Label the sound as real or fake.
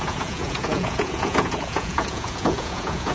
fake